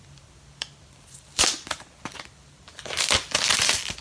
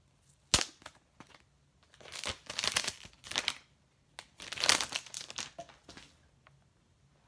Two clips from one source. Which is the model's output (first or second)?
first